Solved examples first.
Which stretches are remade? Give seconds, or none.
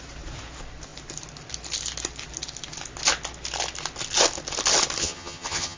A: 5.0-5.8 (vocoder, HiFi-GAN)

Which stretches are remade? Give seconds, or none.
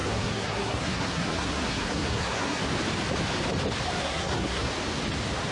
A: 0.0-2.6 (codec, SNAC); 4.0-4.7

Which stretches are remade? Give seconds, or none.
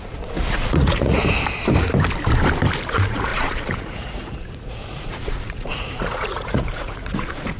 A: 0.0-1.2 (vocoder, Vocos); 2.9-7.6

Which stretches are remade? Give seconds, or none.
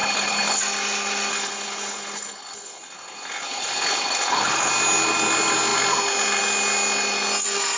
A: 0.0-0.6 (codec, HILCodec); 1.3-4.7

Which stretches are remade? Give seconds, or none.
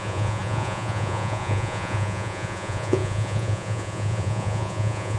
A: 0.0-5.2 (vocoder, Vocos)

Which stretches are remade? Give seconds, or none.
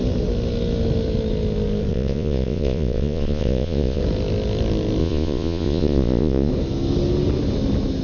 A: 1.9-4.0 (vocoder, Vocos); 5.0-6.5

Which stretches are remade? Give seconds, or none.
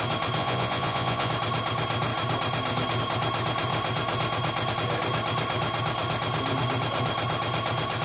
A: 0.4-1.3 (vocoder, Vocos)